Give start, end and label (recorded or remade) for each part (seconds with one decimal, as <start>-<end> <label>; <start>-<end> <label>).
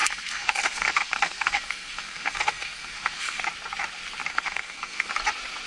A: 0.0-3.4 remade; 3.4-4.3 recorded; 4.3-5.1 remade; 5.1-5.7 recorded